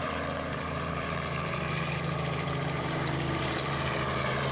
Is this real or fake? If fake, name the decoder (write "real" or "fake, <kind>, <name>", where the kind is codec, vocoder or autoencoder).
fake, vocoder, BigVGAN v2